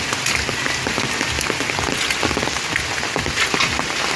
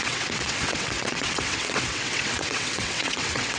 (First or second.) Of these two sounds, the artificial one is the second